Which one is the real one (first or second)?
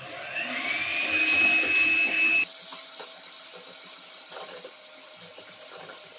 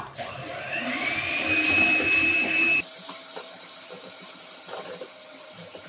first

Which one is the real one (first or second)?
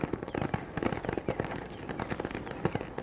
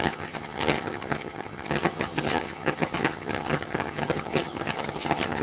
first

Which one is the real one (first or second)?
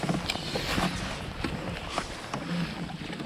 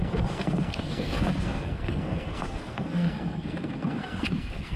first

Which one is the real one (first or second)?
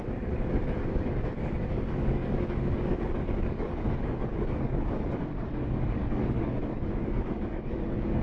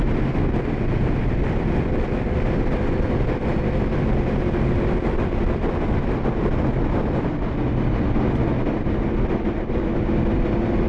second